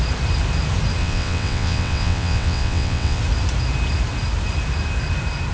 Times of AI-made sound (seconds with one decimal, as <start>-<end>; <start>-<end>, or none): 1.0-3.2